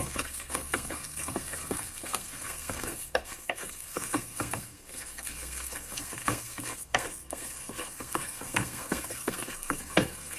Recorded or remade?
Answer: remade